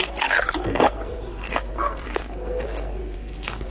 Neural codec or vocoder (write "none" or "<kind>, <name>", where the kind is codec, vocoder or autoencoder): codec, SNAC